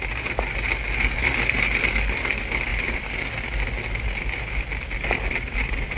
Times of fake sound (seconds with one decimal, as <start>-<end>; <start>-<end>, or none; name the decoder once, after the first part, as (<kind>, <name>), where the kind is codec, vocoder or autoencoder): none